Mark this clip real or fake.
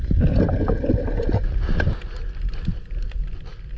real